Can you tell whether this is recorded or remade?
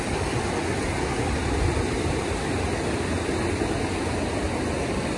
recorded